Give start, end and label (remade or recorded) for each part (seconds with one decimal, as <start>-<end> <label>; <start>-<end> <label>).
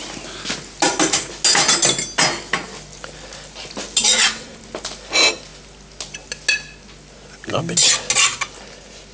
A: 0.0-4.1 recorded; 4.1-4.6 remade; 4.6-9.1 recorded